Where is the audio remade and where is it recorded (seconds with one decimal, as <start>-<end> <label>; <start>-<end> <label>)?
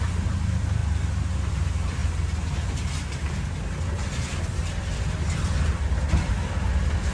0.0-7.1 recorded